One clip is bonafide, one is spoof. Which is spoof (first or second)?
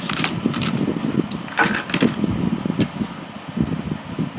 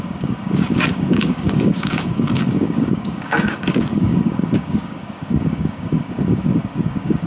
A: second